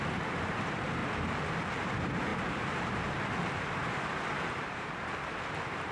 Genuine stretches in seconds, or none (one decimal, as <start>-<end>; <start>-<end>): 1.0-1.7